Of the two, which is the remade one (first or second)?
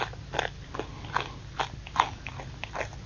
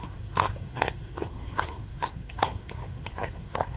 second